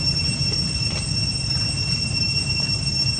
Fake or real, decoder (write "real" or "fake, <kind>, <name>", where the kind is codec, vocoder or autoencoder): real